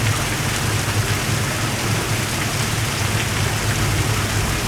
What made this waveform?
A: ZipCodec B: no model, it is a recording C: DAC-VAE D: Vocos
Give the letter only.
B